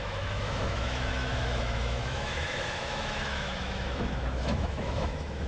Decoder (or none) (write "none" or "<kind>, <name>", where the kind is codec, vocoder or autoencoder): autoencoder, DAC-VAE